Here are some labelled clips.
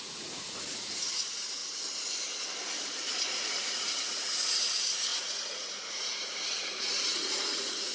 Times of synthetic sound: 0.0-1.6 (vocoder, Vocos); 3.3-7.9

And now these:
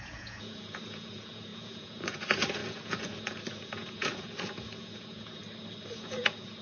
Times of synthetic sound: 0.0-5.4 (vocoder, Vocos); 5.9-6.6

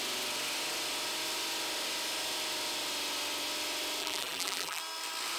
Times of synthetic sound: 4.0-4.8 (vocoder, BigVGAN v2)

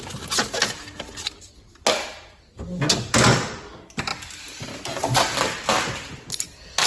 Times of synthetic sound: none